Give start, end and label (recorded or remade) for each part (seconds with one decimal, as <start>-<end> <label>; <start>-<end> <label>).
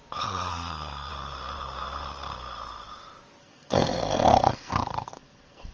0.0-0.5 recorded; 0.5-1.1 remade; 1.1-3.4 recorded; 3.4-5.7 remade